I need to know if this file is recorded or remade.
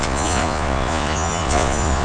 remade